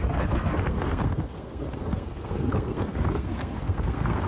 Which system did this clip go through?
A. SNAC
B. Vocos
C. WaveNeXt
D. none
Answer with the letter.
A